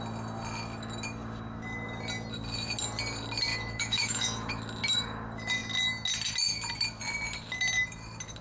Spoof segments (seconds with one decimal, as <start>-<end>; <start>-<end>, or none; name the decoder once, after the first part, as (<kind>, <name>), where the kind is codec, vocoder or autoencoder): 3.5-4.6 (autoencoder, DAC-VAE)